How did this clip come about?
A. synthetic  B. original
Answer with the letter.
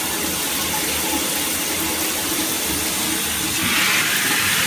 B